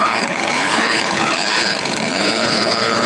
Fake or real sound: fake